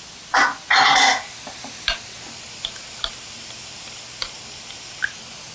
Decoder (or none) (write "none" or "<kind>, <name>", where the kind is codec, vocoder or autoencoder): none